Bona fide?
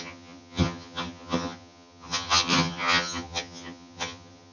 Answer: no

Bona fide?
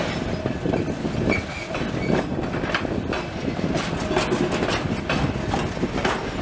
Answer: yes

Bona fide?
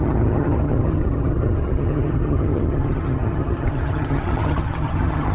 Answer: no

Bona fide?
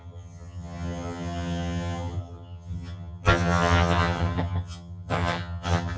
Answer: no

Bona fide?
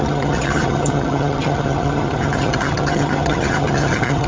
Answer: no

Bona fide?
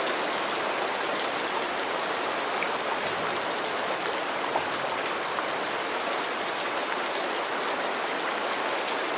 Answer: yes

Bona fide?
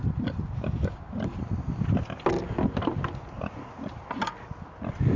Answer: yes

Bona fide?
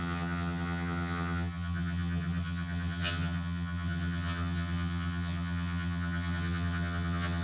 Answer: no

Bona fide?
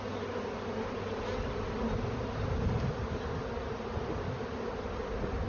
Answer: yes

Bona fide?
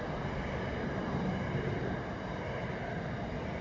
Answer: yes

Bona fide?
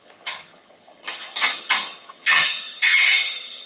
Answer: no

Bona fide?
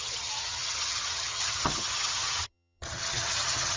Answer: no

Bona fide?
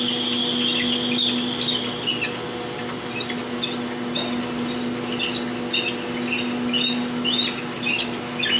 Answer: yes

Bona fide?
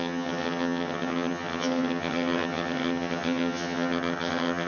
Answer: no